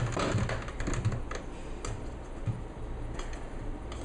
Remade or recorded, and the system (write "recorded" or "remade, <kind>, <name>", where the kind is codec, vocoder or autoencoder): recorded